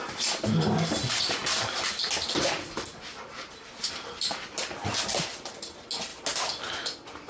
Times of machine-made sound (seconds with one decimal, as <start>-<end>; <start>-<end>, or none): none